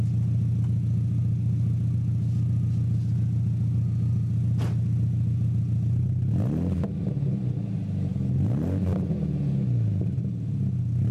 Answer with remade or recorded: recorded